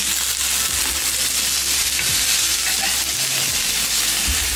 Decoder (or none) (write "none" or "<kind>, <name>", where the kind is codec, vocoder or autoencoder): none